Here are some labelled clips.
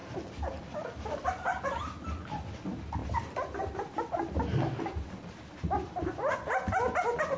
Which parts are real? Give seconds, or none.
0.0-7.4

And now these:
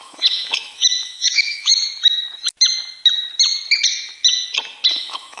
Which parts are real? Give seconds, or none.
1.7-4.9

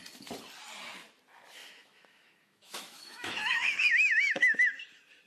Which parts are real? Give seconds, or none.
0.0-1.6; 4.8-5.3

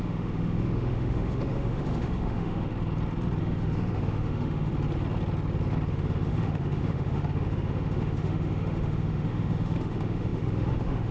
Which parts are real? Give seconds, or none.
2.7-3.4; 4.7-5.9

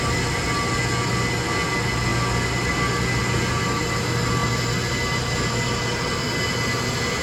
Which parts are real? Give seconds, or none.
0.0-7.2

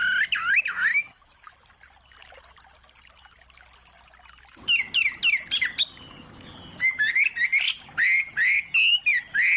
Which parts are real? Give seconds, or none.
0.0-0.9; 1.5-9.6

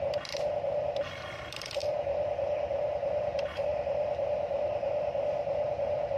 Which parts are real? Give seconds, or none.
0.0-6.2